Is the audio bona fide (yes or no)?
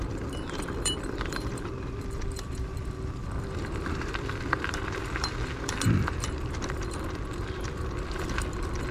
no